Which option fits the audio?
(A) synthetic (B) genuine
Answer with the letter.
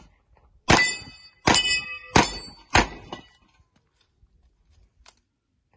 B